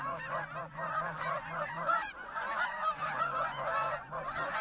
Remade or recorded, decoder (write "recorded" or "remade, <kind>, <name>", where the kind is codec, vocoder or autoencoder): remade, vocoder, Vocos